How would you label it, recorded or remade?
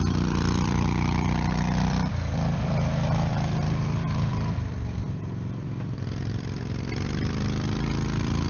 remade